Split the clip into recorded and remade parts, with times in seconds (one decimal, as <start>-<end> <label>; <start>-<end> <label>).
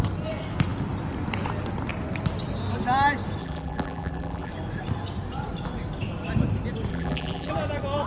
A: 0.0-3.4 recorded; 3.4-4.5 remade; 4.5-6.9 recorded; 6.9-7.5 remade; 7.5-8.1 recorded